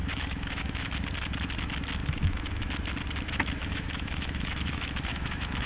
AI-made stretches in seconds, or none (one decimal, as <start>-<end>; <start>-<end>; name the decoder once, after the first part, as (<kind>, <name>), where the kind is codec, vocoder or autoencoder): 0.0-0.9 (autoencoder, DAC-VAE); 2.0-2.7; 3.6-5.7